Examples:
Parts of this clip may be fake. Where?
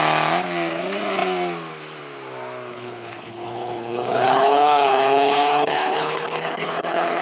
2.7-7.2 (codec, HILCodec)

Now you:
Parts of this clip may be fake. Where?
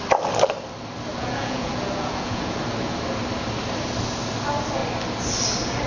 1.1-2.6 (vocoder, Vocos)